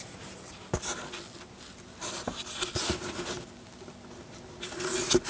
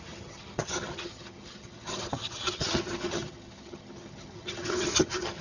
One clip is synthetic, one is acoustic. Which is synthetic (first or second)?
second